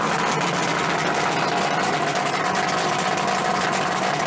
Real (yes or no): yes